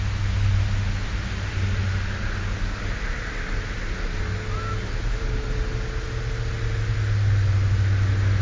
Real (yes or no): yes